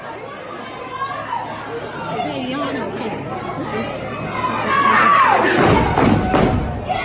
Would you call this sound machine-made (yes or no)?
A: no